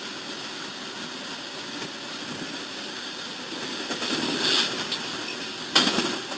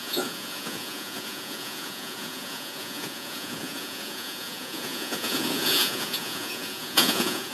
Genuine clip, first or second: first